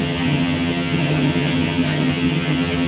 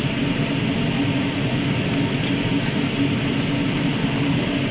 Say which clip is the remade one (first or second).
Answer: first